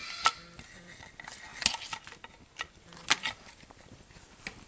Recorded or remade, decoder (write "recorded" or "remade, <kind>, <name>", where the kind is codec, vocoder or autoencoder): recorded